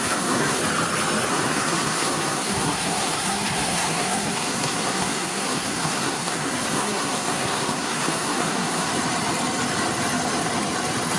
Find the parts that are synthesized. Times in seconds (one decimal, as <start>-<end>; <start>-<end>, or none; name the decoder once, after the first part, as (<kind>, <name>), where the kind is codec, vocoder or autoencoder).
0.0-0.6 (codec, SNAC); 1.3-8.9